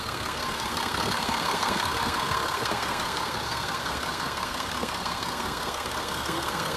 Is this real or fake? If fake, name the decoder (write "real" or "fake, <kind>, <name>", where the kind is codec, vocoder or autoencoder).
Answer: fake, codec, SNAC